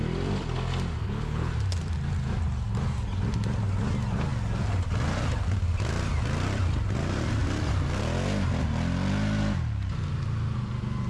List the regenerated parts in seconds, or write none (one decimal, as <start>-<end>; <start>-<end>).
1.0-1.5